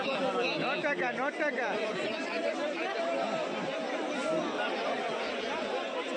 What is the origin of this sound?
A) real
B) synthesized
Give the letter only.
A